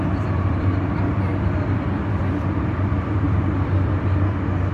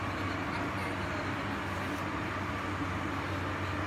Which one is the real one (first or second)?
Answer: second